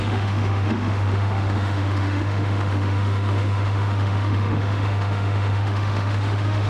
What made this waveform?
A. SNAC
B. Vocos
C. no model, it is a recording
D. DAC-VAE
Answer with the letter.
D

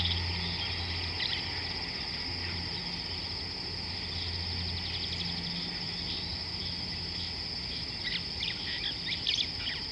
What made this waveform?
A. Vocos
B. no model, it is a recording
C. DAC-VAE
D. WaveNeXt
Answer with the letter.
B